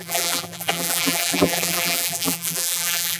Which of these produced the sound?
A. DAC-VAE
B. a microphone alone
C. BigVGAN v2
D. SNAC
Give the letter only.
C